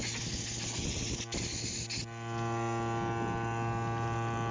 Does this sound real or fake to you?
real